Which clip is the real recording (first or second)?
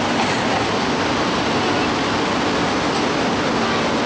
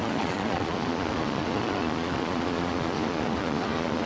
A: first